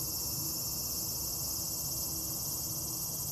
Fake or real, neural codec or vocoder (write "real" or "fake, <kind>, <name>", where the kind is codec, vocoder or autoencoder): real